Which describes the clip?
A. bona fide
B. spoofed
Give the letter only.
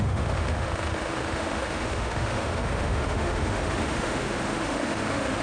B